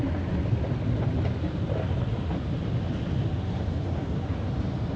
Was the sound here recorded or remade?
recorded